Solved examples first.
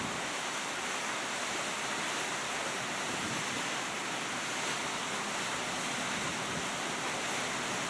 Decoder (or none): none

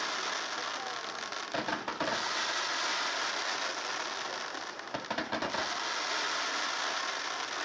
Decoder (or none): none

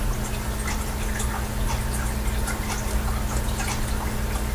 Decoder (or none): none